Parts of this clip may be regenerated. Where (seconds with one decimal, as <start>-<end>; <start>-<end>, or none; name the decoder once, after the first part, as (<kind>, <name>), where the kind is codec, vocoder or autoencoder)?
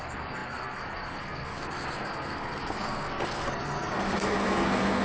0.0-5.0 (codec, SNAC)